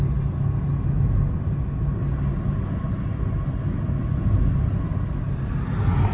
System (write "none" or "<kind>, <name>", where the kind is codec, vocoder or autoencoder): none